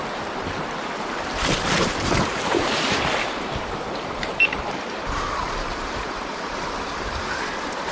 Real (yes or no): no